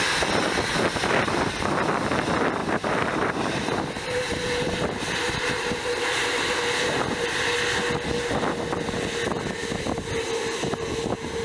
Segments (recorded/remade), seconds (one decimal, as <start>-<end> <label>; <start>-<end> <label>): 0.0-2.6 recorded; 2.6-7.6 remade; 7.6-11.4 recorded